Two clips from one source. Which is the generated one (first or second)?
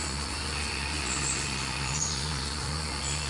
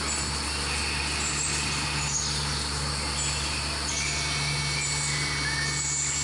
first